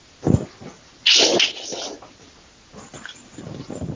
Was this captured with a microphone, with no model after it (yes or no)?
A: yes